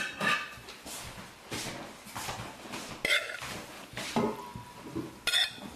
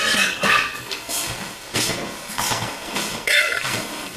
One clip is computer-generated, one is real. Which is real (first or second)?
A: first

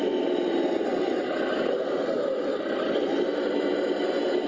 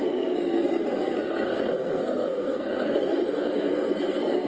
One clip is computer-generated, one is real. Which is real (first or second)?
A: first